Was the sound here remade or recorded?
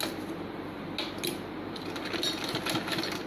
recorded